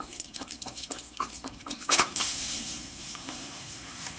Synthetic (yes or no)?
yes